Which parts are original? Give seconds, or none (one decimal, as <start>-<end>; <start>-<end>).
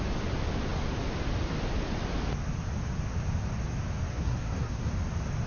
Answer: 0.0-4.1; 4.9-5.5